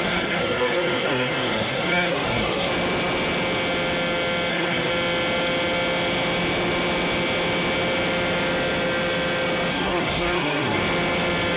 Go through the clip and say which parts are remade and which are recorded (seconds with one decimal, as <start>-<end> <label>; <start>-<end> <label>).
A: 0.0-2.7 remade; 2.7-4.5 recorded; 4.5-4.9 remade; 4.9-9.7 recorded; 9.7-10.8 remade; 10.8-11.6 recorded